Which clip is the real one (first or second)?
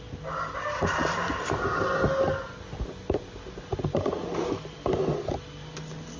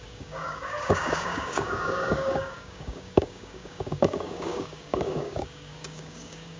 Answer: first